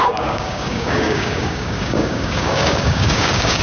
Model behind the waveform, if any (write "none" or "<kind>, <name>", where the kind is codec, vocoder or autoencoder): codec, DAC